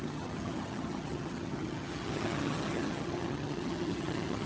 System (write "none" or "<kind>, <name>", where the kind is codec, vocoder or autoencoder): vocoder, HiFi-GAN